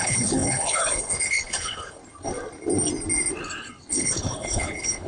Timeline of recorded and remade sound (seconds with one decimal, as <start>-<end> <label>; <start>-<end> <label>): 0.0-2.0 remade; 2.0-3.9 recorded; 3.9-5.1 remade